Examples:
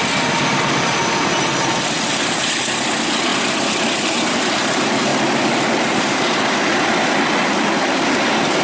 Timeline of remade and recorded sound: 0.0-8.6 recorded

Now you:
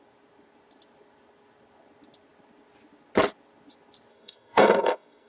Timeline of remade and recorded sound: 0.0-4.1 recorded; 4.1-5.3 remade

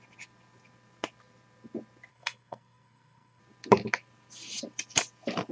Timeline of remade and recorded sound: 0.0-2.1 recorded; 2.1-3.4 remade; 3.4-5.5 recorded

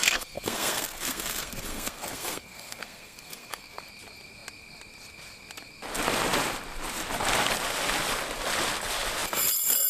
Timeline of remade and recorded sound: 0.0-3.8 remade; 3.8-9.9 recorded

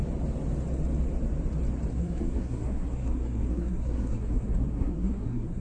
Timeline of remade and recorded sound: 0.0-1.9 recorded; 1.9-5.6 remade

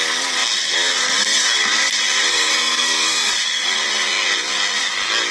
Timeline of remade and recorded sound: 0.0-2.3 recorded; 2.3-3.3 remade; 3.3-5.3 recorded

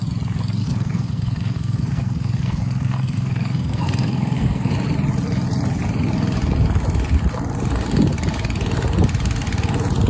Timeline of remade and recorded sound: 0.0-0.6 recorded; 0.6-4.7 remade; 4.7-10.1 recorded